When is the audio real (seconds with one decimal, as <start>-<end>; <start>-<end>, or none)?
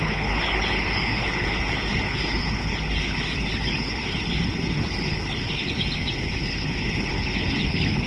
none